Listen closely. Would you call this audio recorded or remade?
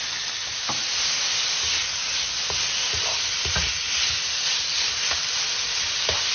recorded